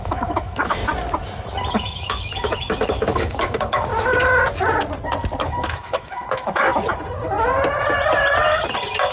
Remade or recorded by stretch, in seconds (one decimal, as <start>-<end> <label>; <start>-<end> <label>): 0.0-0.8 remade; 0.8-1.7 recorded; 1.7-3.9 remade; 3.9-5.5 recorded; 5.5-6.7 remade; 6.7-9.1 recorded